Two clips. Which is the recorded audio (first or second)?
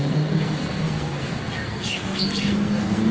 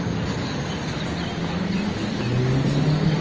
second